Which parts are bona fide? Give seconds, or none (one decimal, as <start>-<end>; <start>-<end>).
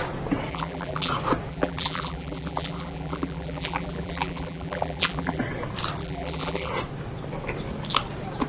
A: 0.0-0.5; 1.1-1.5; 5.4-6.0; 6.7-8.5